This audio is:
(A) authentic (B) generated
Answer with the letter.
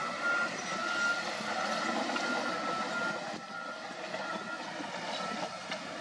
A